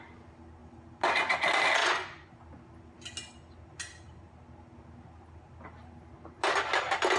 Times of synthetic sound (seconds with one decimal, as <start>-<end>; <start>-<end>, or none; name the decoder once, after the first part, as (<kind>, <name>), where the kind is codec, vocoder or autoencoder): 1.8-2.3 (vocoder, Vocos)